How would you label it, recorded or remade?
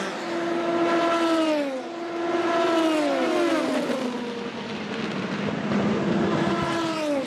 recorded